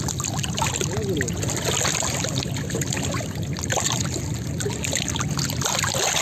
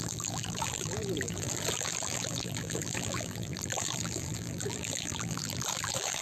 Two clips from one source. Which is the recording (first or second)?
first